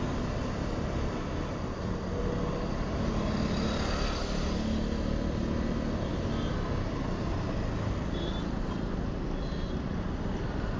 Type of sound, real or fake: real